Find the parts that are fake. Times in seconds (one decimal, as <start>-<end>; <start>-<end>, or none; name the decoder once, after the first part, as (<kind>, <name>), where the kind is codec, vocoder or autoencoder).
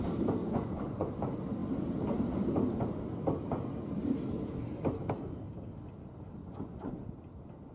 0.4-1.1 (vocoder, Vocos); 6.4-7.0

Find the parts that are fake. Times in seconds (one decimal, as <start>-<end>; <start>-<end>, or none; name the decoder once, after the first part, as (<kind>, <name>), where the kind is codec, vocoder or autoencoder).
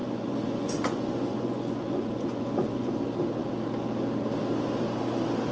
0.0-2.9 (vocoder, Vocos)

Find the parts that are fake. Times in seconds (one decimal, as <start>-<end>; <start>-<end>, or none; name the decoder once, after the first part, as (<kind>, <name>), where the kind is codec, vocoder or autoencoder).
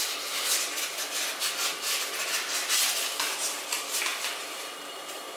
none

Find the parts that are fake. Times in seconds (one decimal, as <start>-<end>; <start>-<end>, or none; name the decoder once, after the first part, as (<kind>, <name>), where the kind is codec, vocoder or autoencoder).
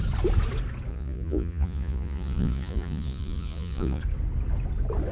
0.9-4.0 (vocoder, Vocos)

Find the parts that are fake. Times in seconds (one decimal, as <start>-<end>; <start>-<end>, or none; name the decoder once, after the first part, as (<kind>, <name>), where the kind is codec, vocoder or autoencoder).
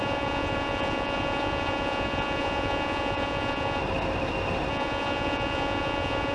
0.0-3.8 (vocoder, Vocos); 4.7-6.3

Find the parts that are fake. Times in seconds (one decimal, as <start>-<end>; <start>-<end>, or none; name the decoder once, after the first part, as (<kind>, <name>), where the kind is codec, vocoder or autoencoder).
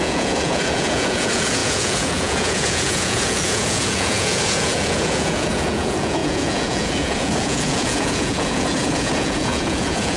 0.0-10.2 (vocoder, Vocos)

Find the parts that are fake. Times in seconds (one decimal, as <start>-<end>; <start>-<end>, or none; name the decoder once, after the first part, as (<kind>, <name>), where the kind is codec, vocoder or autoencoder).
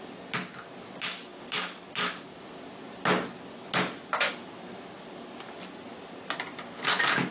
none